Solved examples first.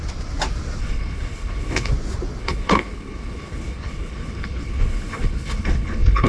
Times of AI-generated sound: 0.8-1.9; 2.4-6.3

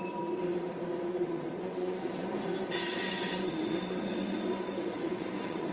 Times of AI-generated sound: 1.1-2.3; 2.9-5.7